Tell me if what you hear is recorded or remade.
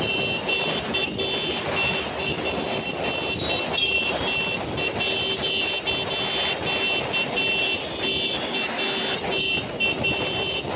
recorded